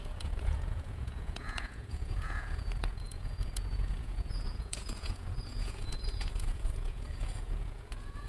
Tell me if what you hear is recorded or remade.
remade